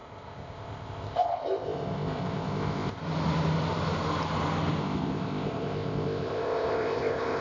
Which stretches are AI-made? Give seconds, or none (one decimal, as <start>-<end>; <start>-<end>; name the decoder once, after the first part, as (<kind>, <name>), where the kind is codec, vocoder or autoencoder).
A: 0.0-3.0 (codec, ZipCodec); 4.8-7.4